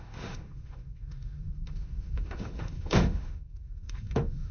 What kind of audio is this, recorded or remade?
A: remade